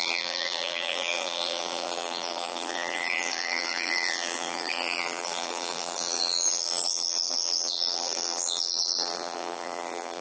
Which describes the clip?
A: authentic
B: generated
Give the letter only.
B